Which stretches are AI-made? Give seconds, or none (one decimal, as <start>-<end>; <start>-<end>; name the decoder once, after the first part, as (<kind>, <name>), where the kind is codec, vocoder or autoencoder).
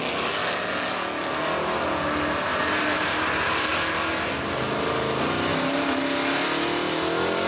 2.5-3.7 (vocoder, BigVGAN v2); 5.5-6.0